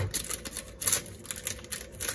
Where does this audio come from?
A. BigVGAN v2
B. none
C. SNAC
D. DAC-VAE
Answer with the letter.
B